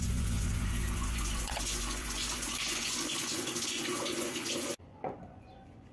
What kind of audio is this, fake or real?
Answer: fake